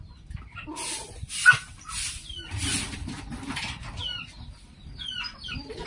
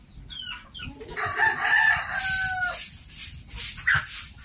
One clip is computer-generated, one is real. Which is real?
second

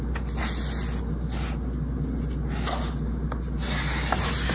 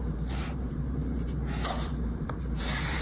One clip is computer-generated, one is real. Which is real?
first